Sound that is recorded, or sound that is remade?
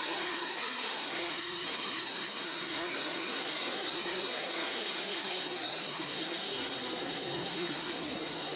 remade